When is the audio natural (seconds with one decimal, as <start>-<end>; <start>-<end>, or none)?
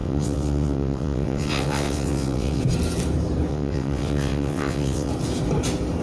2.6-3.5; 5.1-6.0